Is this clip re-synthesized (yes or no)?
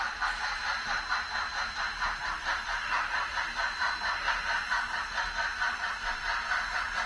no